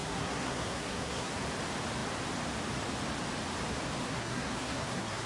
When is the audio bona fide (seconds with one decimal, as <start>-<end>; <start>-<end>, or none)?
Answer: 1.3-4.0

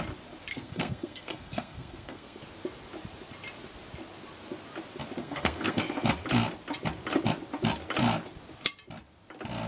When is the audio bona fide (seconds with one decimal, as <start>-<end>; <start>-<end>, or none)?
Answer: 0.0-0.5; 2.4-5.2; 5.8-9.7

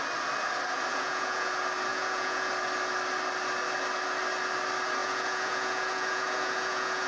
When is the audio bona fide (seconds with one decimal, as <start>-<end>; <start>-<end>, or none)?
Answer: 0.0-0.9; 1.5-1.9; 2.5-5.0

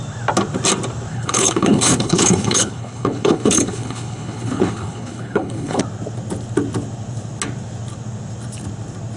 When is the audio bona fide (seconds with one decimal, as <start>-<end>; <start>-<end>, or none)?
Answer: 0.0-1.1; 5.8-9.2

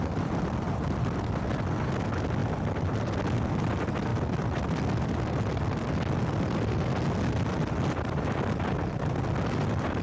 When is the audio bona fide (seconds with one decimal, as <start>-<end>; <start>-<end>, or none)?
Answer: 0.0-10.0

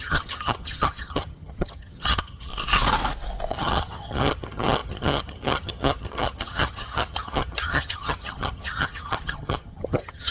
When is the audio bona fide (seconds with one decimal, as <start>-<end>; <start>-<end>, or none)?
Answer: 2.5-3.5